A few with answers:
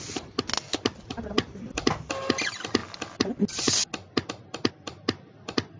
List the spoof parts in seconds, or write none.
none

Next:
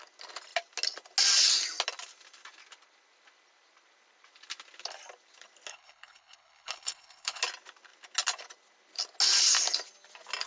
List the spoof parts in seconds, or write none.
5.7-7.4 (codec, HILCodec)

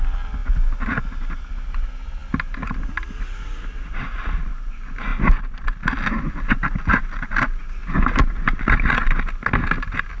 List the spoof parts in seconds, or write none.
none

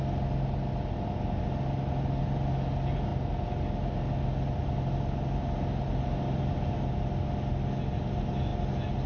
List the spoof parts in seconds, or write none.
none

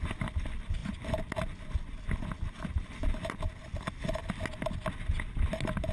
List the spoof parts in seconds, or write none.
none

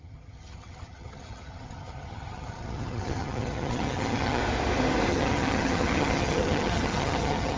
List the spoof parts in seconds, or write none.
0.0-4.4 (vocoder, HiFi-GAN); 5.1-7.6

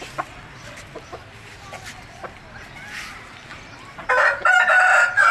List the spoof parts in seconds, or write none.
3.5-4.1 (vocoder, BigVGAN v2)

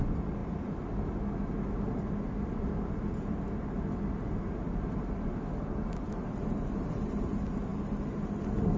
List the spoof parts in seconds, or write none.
none